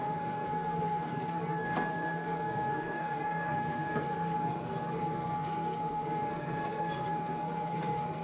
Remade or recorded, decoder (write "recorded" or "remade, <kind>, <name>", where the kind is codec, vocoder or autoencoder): remade, codec, SNAC